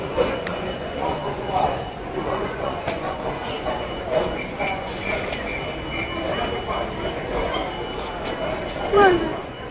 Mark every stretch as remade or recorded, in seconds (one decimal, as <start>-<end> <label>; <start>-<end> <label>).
0.0-5.5 remade; 5.5-7.1 recorded; 7.1-7.6 remade; 7.6-8.9 recorded; 8.9-9.7 remade